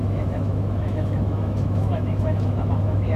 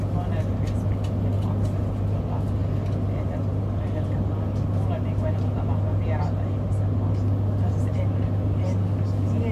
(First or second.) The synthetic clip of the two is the first